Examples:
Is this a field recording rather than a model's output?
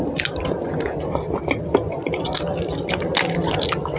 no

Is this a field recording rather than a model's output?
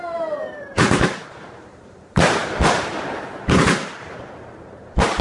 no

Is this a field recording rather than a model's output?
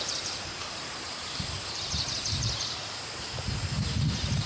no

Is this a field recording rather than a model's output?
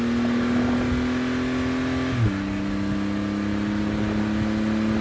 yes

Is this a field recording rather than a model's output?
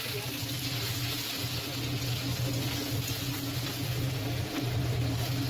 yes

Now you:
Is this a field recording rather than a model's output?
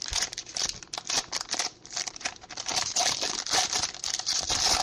no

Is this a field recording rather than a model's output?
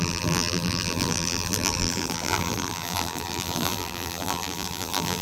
no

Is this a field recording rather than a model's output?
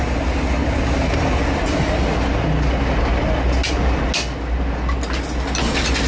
yes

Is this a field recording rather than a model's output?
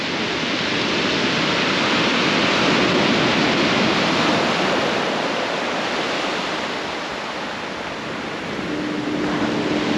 yes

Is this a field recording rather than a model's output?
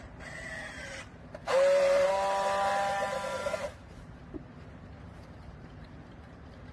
no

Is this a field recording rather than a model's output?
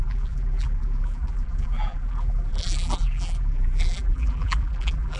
no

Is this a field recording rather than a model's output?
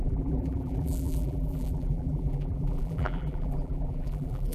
no